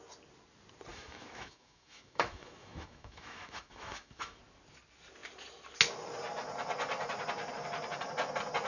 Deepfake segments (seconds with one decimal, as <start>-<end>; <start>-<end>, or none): 0.9-4.4